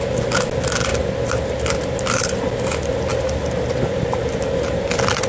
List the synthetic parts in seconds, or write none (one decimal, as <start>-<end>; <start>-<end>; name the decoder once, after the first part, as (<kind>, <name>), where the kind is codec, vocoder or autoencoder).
none